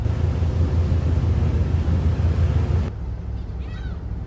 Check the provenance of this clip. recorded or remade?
recorded